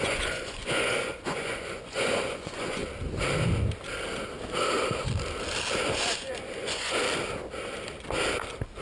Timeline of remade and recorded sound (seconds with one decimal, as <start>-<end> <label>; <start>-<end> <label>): 0.0-2.8 remade; 2.8-5.9 recorded; 5.9-7.0 remade; 7.0-8.8 recorded